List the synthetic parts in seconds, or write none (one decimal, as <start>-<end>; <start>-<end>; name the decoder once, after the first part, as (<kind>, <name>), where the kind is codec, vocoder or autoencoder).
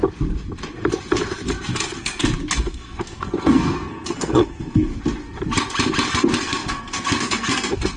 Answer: 2.0-4.9 (codec, SNAC); 6.1-8.0